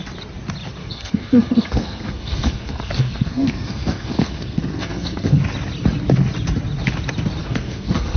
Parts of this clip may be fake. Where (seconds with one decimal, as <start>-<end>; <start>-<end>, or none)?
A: 0.8-5.4; 7.4-8.2